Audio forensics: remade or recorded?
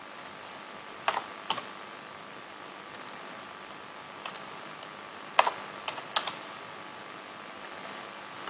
recorded